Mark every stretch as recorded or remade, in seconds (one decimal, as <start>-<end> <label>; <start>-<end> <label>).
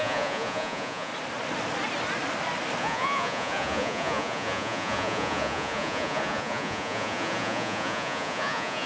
0.0-1.1 remade; 1.1-2.8 recorded; 2.8-8.9 remade